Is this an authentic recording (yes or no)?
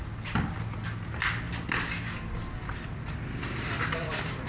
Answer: yes